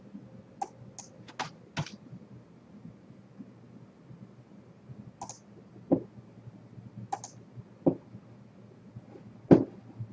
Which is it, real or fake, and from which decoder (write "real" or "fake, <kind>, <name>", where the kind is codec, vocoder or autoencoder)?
real